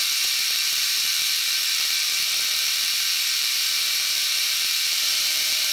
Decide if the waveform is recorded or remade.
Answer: remade